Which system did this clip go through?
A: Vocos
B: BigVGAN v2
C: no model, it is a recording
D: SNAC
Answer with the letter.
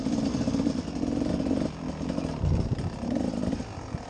C